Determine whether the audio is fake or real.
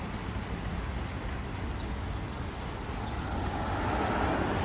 real